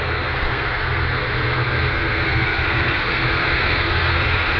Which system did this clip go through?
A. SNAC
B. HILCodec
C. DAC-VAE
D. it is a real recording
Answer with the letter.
A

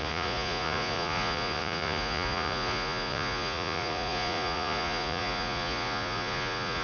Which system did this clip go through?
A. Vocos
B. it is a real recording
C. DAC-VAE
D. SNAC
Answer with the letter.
A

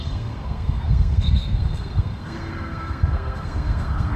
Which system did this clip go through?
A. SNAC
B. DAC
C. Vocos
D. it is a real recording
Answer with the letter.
A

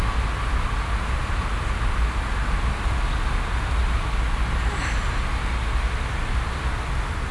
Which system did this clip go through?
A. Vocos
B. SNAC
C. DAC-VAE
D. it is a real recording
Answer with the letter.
D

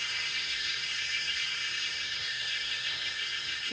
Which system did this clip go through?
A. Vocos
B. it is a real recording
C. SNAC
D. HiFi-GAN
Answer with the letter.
C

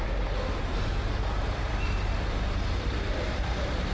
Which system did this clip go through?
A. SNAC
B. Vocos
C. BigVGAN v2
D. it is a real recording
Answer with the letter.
C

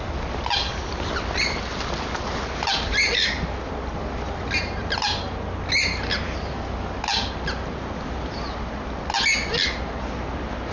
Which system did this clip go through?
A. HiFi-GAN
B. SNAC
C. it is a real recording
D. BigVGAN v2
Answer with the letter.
C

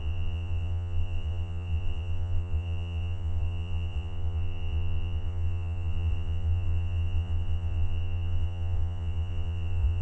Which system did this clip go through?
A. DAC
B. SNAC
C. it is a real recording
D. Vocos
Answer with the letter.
D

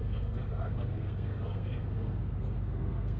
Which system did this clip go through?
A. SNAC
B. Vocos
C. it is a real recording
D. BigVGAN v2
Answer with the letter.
A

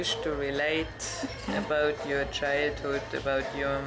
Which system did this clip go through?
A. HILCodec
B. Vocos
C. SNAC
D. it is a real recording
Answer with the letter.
D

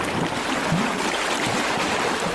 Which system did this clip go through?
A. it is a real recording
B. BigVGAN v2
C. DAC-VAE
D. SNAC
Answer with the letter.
B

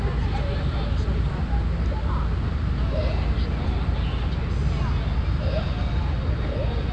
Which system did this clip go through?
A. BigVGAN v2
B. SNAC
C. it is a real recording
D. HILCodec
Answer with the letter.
C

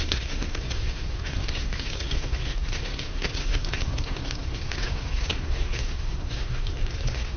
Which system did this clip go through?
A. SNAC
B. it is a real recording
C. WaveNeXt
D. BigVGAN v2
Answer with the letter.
A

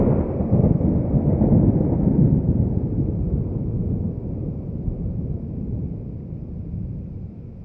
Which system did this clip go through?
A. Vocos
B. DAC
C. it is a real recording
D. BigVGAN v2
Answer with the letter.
C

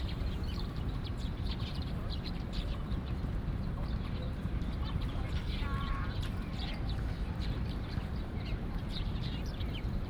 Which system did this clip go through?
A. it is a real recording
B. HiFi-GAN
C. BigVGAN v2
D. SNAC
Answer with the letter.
C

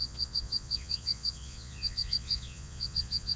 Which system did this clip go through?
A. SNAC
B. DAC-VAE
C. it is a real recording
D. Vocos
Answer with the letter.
D